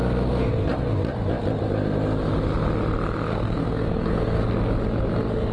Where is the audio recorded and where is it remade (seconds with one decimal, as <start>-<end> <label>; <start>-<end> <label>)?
0.0-3.3 recorded; 3.3-4.5 remade; 4.5-5.5 recorded